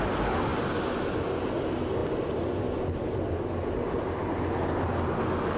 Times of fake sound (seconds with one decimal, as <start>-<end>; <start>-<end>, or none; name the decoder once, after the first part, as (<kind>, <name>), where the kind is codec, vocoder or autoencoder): none